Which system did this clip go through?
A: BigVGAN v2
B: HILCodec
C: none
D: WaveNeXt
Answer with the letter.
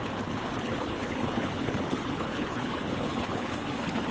B